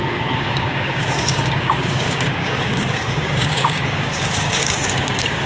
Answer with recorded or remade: remade